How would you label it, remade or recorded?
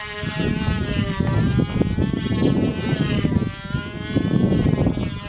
recorded